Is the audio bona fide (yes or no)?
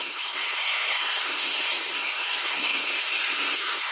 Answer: no